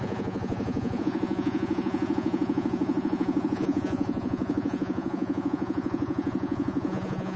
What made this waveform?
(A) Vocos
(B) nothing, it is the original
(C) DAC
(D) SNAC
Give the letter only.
A